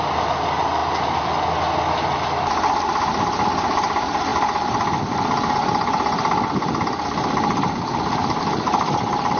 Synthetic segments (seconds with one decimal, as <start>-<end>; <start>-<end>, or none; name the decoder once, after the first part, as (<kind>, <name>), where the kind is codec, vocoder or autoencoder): none